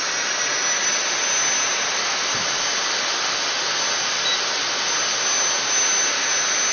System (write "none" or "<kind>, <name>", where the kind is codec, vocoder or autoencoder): none